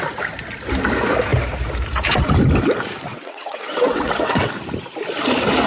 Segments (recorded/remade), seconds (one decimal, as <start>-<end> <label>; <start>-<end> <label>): 0.0-3.1 recorded; 3.1-4.5 remade; 4.5-5.7 recorded